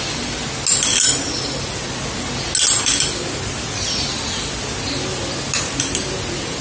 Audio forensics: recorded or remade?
recorded